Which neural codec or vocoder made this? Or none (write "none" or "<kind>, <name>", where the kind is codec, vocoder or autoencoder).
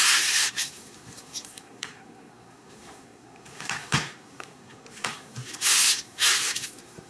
codec, SNAC